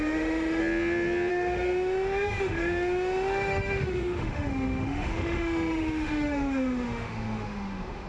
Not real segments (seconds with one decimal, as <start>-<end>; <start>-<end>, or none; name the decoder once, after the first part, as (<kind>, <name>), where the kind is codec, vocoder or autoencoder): 0.0-0.6 (autoencoder, DAC-VAE); 1.3-8.1